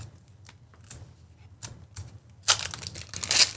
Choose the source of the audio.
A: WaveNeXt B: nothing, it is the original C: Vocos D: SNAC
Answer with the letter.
B